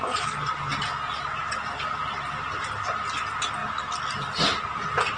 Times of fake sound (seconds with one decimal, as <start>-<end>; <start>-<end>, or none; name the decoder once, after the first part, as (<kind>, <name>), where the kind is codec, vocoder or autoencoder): none